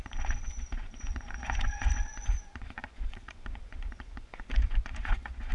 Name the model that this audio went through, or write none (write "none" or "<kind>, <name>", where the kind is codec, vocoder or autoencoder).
vocoder, Vocos